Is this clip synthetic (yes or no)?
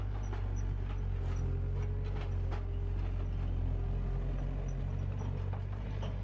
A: no